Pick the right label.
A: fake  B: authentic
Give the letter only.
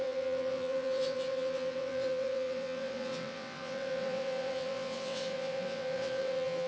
A